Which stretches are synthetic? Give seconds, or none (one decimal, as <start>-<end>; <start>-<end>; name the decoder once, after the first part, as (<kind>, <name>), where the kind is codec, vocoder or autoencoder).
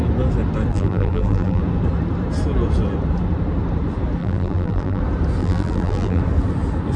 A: 0.7-1.6 (vocoder, BigVGAN v2); 4.2-5.0; 5.4-6.2